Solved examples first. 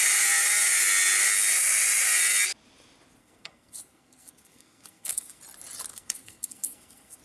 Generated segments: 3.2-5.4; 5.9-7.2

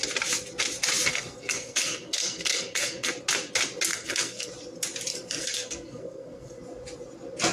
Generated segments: 1.1-3.1; 3.9-4.5; 5.1-6.6

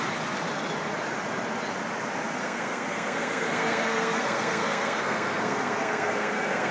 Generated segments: 2.4-6.7

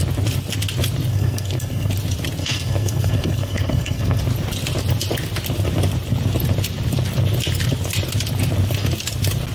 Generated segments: 1.1-1.9; 2.4-4.2

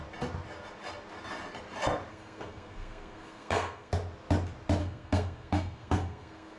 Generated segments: 2.1-3.9; 4.8-6.6

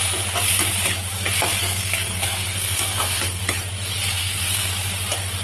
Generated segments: 1.6-3.4; 4.2-4.7